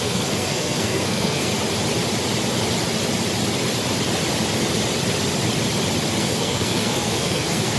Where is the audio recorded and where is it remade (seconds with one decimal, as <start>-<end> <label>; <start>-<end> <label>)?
0.0-1.5 remade; 1.5-6.2 recorded; 6.2-7.8 remade